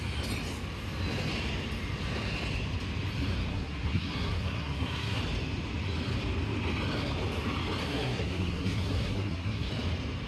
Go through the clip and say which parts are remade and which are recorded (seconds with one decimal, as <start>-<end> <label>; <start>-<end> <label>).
0.0-3.5 recorded; 3.5-5.2 remade; 5.2-7.8 recorded; 7.8-9.7 remade; 9.7-10.3 recorded